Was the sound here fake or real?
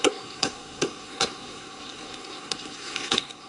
fake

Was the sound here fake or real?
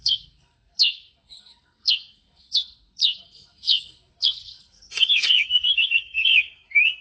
fake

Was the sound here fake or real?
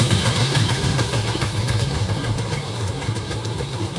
fake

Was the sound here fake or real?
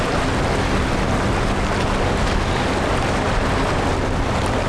real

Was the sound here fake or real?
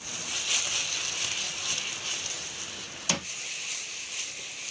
real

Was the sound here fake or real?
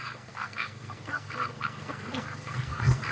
fake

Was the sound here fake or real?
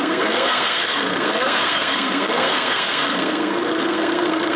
fake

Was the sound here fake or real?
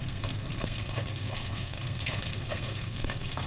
fake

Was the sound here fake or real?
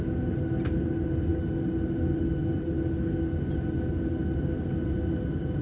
real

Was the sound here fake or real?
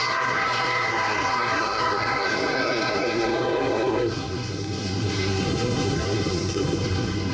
fake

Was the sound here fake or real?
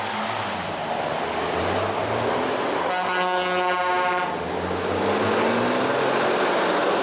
real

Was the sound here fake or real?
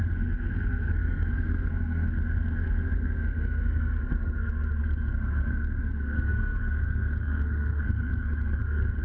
fake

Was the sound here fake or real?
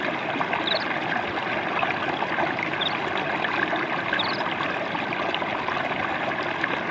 real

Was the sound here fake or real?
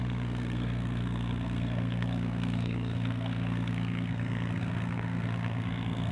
fake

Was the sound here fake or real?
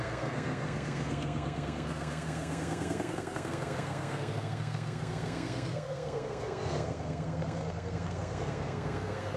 fake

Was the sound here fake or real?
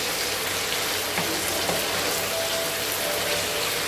real